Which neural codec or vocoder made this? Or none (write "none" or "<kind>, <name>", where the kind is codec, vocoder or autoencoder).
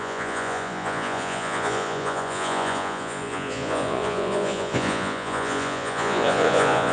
vocoder, Vocos